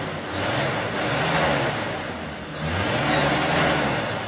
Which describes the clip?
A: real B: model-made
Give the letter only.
A